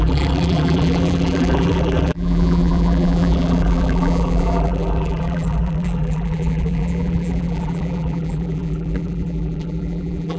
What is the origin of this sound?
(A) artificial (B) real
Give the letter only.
A